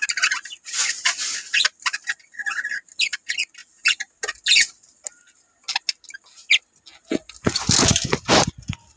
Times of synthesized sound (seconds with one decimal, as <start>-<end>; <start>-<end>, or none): none